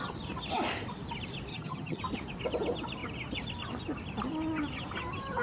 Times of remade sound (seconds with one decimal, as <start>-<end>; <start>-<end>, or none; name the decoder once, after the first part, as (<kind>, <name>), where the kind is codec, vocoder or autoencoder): 1.5-2.0 (vocoder, HiFi-GAN)